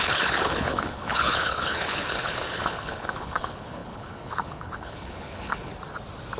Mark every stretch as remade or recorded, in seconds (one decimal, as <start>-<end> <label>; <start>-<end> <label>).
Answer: 0.0-5.7 remade; 5.7-6.4 recorded